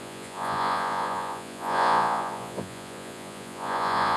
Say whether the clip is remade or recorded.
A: remade